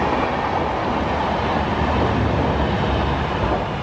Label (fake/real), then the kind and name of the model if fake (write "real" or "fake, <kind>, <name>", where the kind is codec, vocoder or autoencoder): real